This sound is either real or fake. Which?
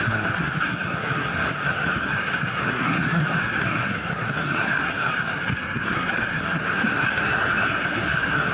fake